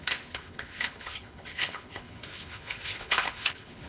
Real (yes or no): no